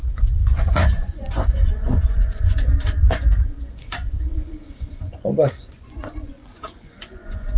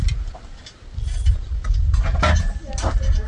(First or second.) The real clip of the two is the second